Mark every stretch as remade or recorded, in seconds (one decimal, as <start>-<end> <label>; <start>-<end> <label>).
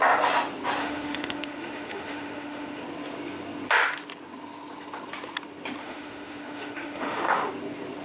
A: 0.0-0.8 recorded; 0.8-2.8 remade; 2.8-5.8 recorded; 5.8-7.5 remade; 7.5-8.0 recorded